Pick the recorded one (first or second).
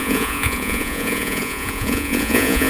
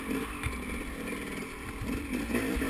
second